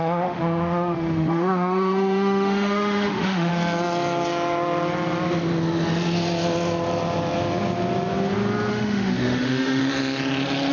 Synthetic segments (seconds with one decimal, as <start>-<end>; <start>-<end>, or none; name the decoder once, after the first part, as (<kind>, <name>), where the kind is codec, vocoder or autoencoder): 0.0-3.5 (autoencoder, DAC-VAE); 8.7-9.8

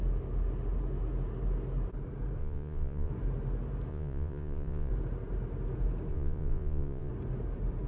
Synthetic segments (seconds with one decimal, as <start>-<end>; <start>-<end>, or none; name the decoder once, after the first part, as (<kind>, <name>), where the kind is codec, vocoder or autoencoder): 2.4-3.1 (vocoder, Vocos); 3.9-4.9; 6.1-7.1

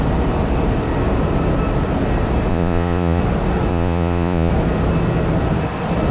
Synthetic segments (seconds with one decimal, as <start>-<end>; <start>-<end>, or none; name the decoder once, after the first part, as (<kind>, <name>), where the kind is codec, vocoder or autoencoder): 2.5-3.2 (vocoder, Vocos); 3.7-4.5